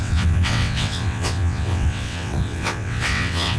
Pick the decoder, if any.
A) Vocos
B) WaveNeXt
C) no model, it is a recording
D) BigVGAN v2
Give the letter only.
B